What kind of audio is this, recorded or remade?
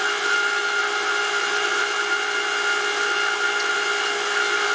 recorded